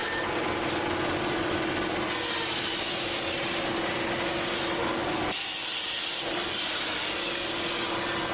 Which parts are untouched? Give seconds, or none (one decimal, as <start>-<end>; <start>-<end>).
0.0-8.3